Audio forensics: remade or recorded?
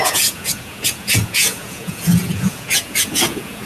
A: remade